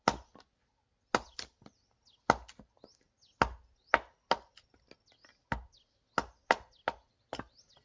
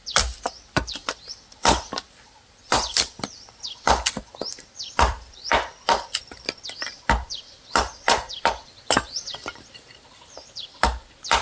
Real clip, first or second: first